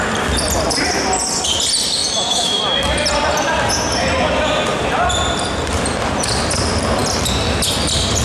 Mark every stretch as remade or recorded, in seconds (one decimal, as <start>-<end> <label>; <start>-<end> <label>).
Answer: 0.0-2.0 recorded; 2.0-2.6 remade; 2.6-8.2 recorded